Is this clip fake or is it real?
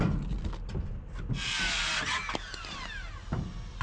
real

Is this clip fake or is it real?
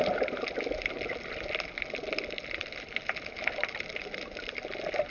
real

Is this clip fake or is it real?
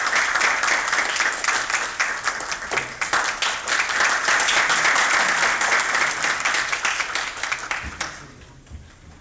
real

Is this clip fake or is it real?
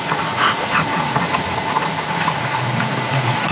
fake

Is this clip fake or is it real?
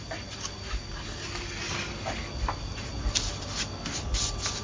real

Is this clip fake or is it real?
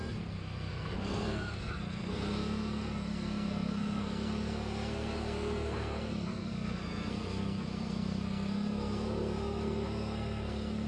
fake